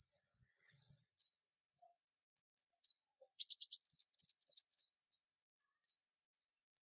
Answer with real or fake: fake